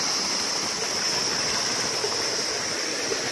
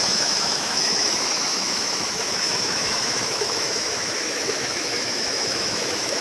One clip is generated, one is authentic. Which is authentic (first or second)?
first